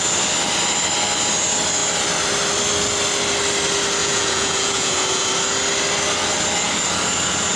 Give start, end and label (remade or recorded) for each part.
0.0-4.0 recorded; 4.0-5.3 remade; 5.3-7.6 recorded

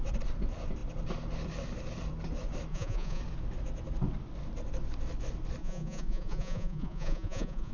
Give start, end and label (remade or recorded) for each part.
0.0-2.7 recorded; 2.7-3.2 remade; 3.2-5.6 recorded; 5.6-7.7 remade